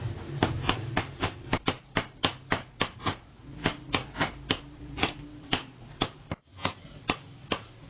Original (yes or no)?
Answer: no